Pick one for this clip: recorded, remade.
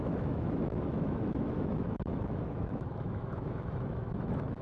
remade